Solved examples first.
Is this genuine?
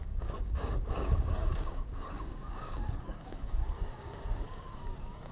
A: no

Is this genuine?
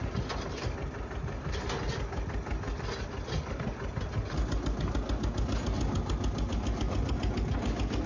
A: yes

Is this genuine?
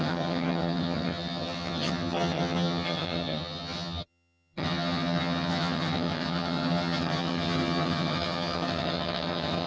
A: no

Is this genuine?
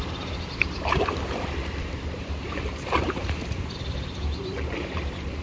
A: no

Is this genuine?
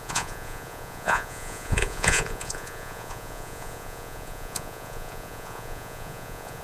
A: no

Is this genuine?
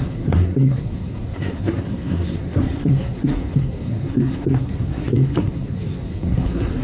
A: no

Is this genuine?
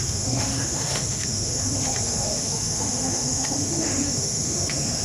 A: no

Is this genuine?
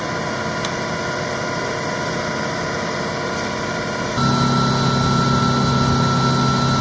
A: yes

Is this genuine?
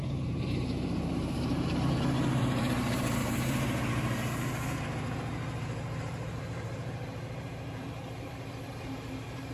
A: no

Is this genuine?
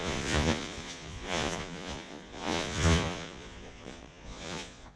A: no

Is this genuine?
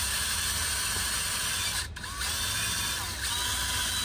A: yes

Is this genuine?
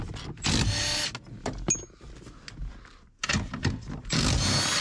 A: yes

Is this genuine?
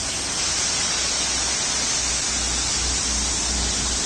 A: yes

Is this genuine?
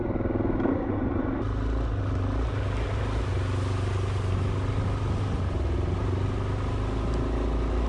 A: yes